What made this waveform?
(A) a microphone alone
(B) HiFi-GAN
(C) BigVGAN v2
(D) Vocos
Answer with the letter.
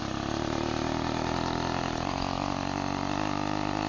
A